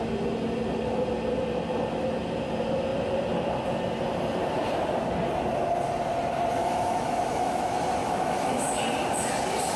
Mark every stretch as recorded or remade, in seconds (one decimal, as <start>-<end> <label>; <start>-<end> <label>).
0.0-6.6 recorded; 6.6-7.6 remade; 7.6-8.0 recorded; 8.0-8.8 remade; 8.8-9.8 recorded